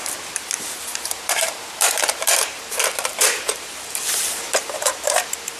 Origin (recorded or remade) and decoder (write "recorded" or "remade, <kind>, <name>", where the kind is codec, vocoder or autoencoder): remade, vocoder, BigVGAN v2